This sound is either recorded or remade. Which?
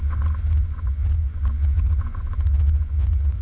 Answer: remade